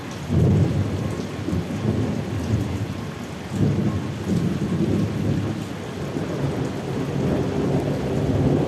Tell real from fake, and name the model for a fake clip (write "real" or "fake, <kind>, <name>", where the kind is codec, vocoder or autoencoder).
real